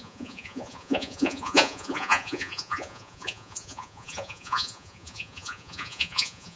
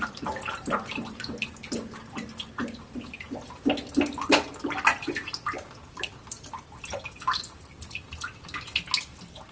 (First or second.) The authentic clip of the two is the second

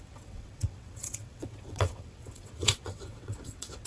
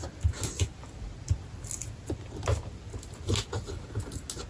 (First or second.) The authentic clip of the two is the second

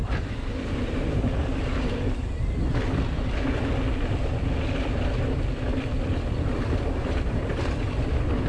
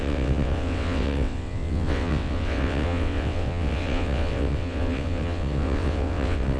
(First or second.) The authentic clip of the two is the first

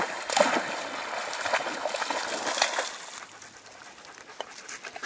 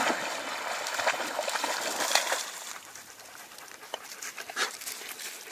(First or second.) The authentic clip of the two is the first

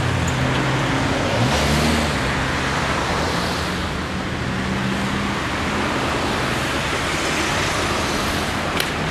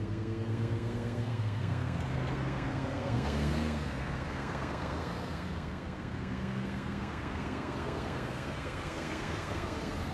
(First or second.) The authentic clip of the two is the first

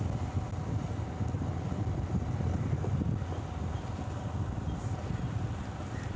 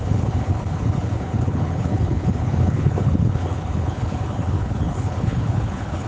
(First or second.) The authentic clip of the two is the first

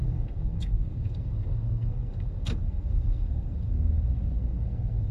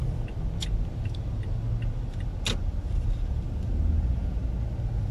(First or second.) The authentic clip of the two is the second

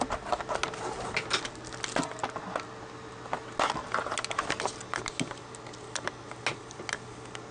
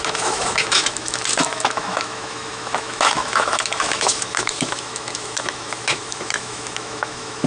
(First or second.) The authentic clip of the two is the first